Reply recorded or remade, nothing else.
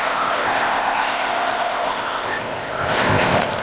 remade